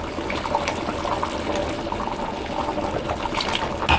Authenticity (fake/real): real